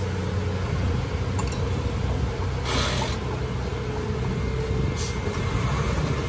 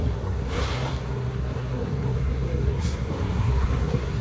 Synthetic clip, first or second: second